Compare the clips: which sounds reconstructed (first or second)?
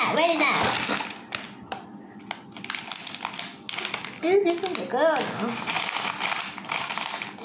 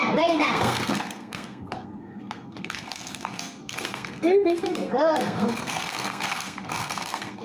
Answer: second